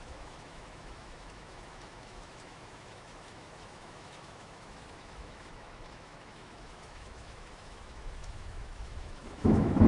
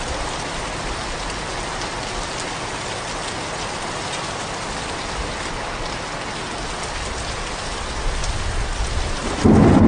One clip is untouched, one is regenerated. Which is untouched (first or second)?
second